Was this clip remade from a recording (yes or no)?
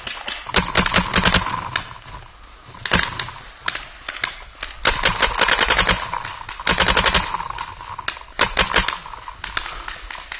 no